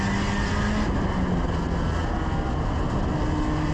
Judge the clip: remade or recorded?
recorded